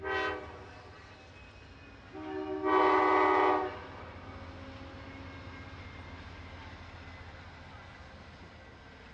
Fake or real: real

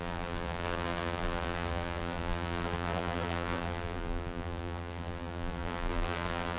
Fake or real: fake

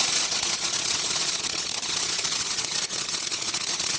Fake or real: fake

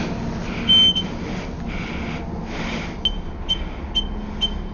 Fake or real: real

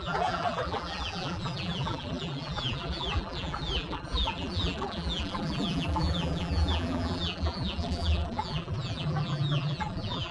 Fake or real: fake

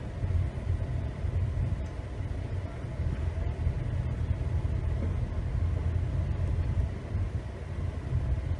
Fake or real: real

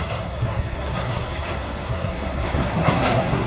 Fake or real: fake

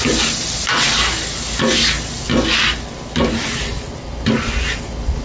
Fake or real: real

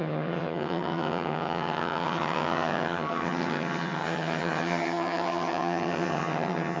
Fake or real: fake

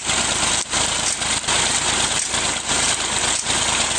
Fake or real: real